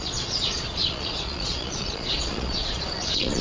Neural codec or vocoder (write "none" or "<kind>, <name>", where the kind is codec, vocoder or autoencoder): vocoder, Vocos